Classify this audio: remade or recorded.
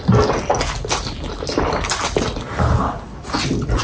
recorded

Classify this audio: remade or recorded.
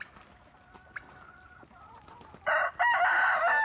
recorded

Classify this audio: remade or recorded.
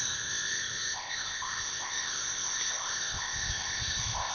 remade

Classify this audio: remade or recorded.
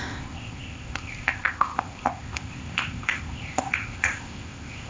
remade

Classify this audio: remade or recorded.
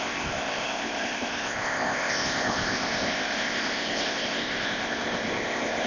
remade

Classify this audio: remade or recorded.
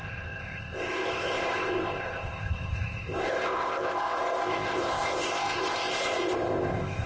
remade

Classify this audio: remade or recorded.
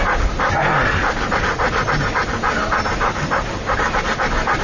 recorded